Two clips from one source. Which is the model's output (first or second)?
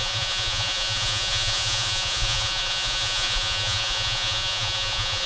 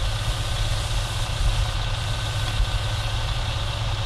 first